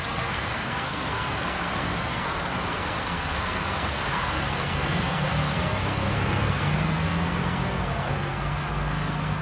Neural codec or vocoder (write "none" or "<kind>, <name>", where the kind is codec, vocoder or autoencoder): codec, SNAC